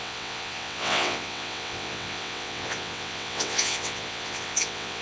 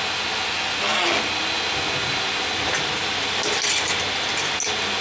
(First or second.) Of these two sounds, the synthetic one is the first